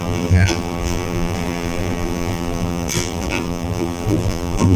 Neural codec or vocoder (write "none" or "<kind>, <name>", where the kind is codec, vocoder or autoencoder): vocoder, BigVGAN v2